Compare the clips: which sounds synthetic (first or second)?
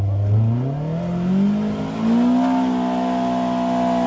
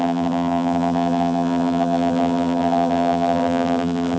second